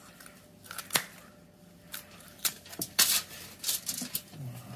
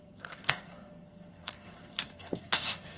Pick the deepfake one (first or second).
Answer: second